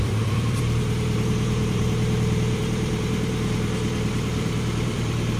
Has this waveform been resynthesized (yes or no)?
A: yes